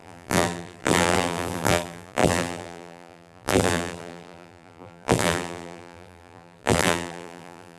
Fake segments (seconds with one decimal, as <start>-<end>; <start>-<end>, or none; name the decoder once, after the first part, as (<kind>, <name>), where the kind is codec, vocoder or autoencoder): 0.0-7.8 (vocoder, BigVGAN v2)